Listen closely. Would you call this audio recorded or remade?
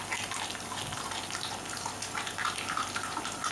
recorded